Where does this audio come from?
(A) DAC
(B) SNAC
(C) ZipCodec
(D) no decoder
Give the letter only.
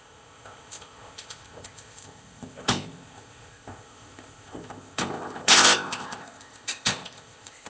C